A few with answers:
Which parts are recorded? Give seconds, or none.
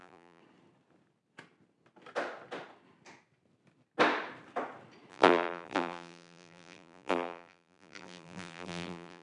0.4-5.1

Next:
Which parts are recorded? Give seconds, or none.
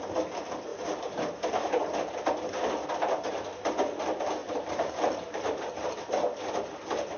0.0-4.4; 5.7-7.2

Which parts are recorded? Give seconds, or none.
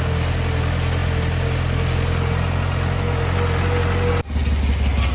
0.0-5.1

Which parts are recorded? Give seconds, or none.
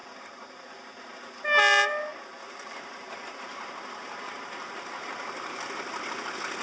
0.6-2.1; 6.1-6.6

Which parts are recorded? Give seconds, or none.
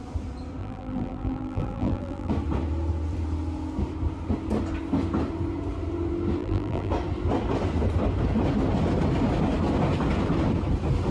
0.0-0.6; 2.3-6.4; 6.9-11.1